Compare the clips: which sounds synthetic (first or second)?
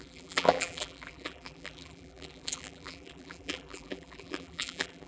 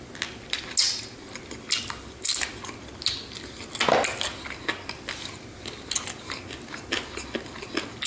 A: first